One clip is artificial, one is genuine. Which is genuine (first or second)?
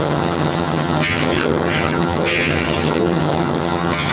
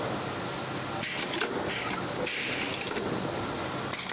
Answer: second